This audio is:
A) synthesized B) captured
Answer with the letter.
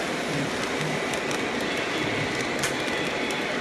B